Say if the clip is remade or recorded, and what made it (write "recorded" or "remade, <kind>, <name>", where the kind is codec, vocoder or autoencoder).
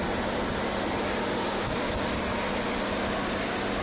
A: recorded